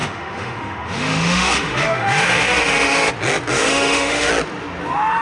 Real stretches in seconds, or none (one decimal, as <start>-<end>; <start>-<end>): 3.1-3.5; 4.3-5.2